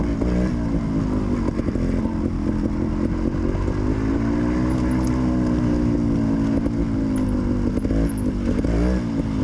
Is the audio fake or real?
real